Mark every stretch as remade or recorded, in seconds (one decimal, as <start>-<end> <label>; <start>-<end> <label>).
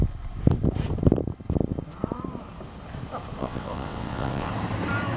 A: 0.0-3.4 recorded; 3.4-4.5 remade; 4.5-5.2 recorded